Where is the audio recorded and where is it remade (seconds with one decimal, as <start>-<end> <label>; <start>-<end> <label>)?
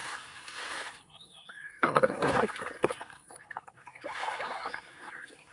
0.0-5.5 remade